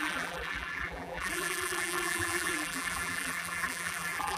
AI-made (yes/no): yes